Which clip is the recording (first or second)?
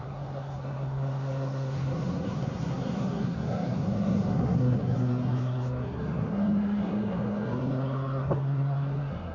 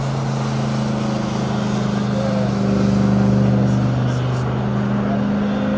second